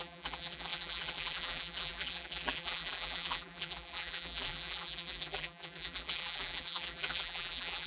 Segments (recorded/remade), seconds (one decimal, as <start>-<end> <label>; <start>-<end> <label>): 0.0-7.9 remade